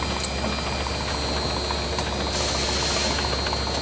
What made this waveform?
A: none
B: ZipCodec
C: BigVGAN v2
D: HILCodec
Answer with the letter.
A